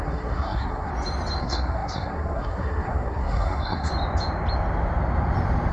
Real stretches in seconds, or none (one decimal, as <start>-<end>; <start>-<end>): 0.9-1.4; 3.9-5.7